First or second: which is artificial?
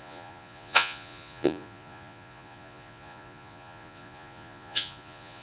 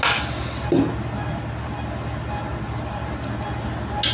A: first